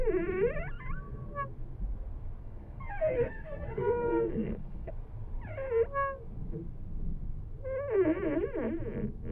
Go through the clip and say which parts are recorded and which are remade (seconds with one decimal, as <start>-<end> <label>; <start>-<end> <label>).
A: 0.0-2.4 recorded; 2.4-4.9 remade; 4.9-9.3 recorded